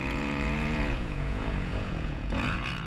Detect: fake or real fake